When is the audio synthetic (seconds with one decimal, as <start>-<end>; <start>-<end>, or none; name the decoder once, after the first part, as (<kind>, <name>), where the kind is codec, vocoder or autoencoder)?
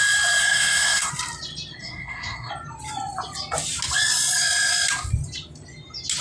0.4-1.1 (codec, SNAC); 1.8-2.5